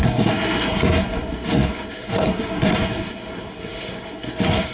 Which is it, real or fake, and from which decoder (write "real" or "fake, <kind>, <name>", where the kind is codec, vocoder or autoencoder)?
fake, codec, SNAC